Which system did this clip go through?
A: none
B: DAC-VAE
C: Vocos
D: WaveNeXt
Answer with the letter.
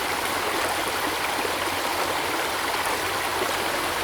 A